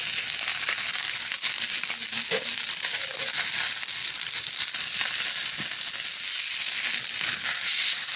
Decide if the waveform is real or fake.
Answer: real